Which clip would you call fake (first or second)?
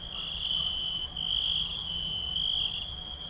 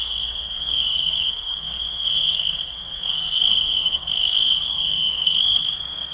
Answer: second